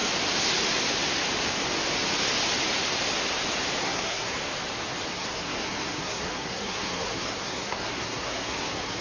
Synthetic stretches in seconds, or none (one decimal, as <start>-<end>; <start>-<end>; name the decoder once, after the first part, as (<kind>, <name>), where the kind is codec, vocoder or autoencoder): 3.8-4.4 (codec, SNAC); 5.1-9.0